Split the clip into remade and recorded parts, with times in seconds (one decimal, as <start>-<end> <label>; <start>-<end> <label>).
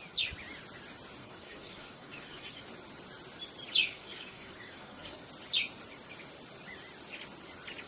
0.0-1.2 recorded; 1.2-2.6 remade; 2.6-3.8 recorded; 3.8-5.2 remade; 5.2-7.9 recorded